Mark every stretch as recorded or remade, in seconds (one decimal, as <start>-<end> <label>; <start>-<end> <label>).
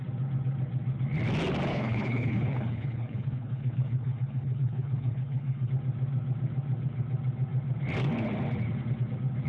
0.0-1.7 recorded; 1.7-5.7 remade; 5.7-9.5 recorded